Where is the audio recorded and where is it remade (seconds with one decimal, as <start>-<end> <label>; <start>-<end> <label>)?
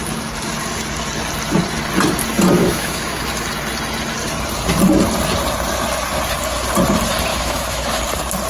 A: 0.0-2.6 recorded; 2.6-3.2 remade; 3.2-7.3 recorded; 7.3-8.0 remade; 8.0-8.5 recorded